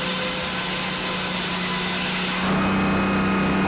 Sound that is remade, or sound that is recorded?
recorded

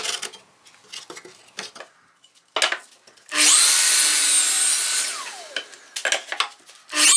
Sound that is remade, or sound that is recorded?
recorded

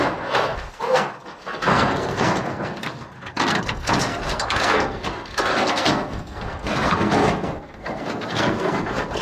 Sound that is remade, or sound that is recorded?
remade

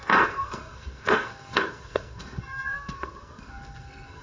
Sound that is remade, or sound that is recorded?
remade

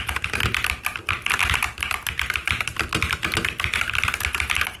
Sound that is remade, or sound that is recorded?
recorded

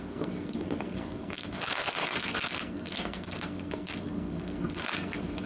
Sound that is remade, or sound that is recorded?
remade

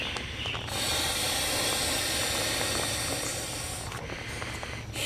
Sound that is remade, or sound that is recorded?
recorded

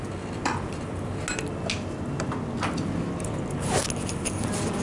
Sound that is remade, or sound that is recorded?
recorded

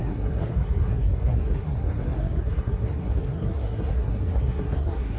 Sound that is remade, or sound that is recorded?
remade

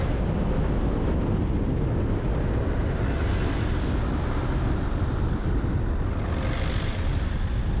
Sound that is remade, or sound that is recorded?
recorded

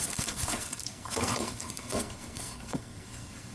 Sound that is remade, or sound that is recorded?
remade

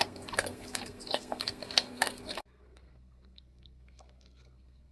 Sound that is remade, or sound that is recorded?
remade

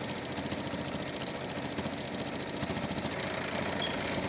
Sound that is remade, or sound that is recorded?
recorded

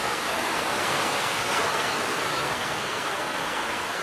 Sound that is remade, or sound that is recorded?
remade